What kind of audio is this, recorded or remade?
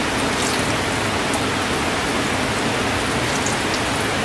recorded